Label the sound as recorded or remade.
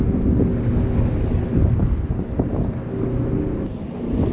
recorded